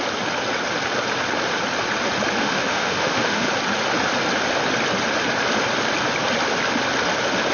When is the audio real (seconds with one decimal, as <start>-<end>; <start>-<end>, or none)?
0.0-2.4; 3.5-7.5